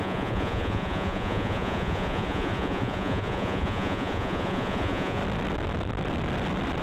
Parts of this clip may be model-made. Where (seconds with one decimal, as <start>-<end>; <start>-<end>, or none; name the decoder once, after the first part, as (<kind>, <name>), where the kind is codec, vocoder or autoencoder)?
0.0-5.2 (vocoder, Vocos)